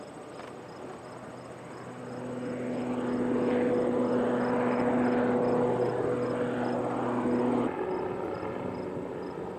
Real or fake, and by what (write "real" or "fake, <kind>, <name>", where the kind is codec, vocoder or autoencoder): real